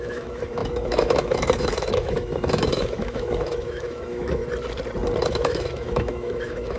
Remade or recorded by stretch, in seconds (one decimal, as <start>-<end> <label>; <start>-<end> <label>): 0.0-4.4 remade; 4.4-5.2 recorded; 5.2-6.8 remade